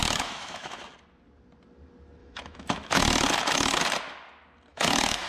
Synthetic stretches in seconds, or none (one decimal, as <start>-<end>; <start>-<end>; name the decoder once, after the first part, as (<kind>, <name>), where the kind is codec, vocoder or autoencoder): 0.0-0.9 (autoencoder, DAC-VAE); 2.2-3.0; 4.7-5.3